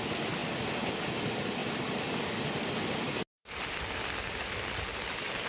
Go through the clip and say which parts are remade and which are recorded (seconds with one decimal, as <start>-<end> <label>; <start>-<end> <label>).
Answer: 0.0-5.5 recorded